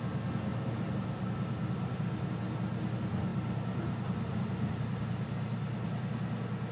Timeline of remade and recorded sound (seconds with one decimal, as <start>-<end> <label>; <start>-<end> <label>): 0.0-0.5 recorded; 0.5-2.3 remade; 2.3-3.3 recorded; 3.3-6.1 remade; 6.1-6.7 recorded